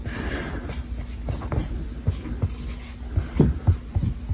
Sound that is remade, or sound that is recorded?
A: recorded